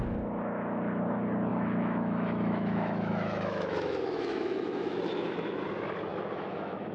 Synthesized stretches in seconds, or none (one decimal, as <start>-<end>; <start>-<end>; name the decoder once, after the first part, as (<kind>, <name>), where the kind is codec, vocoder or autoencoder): 1.5-5.6 (autoencoder, DAC-VAE); 6.1-6.9

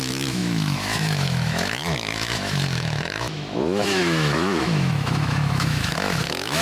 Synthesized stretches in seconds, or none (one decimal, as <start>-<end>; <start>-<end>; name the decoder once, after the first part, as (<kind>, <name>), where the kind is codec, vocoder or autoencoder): 0.0-6.6 (autoencoder, DAC-VAE)

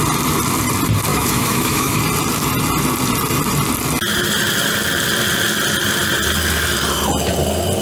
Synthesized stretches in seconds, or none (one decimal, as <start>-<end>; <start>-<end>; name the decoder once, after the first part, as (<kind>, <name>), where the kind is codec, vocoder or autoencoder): 1.1-2.0 (autoencoder, DAC-VAE)

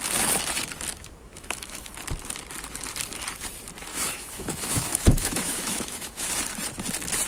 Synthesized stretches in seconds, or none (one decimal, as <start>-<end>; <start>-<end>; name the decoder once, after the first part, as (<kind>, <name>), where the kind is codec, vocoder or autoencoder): 0.9-1.9 (autoencoder, DAC-VAE); 3.9-6.3

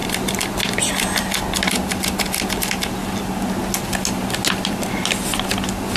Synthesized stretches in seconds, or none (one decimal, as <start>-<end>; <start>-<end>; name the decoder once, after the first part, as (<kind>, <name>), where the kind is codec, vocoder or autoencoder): none